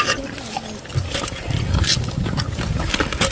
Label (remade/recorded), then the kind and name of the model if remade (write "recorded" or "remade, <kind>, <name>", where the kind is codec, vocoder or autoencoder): recorded